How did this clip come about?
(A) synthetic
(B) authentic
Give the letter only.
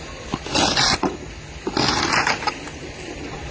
B